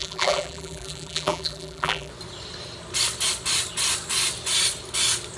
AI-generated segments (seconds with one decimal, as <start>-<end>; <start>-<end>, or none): 0.0-2.1